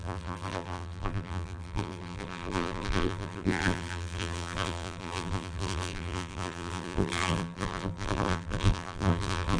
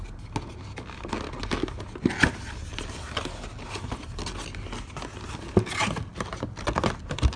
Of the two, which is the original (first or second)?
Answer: second